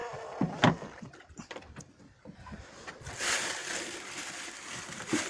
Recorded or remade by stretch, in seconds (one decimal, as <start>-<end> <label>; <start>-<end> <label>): 0.0-2.9 remade; 2.9-3.6 recorded; 3.6-5.3 remade